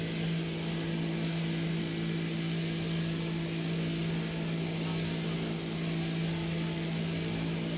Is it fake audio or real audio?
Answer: real